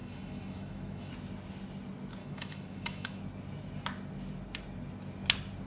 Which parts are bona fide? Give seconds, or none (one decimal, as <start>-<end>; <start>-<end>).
1.1-2.2; 3.2-5.7